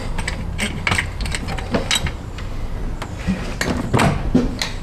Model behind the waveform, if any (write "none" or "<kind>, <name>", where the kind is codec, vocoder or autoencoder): none